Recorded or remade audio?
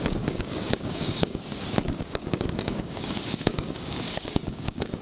remade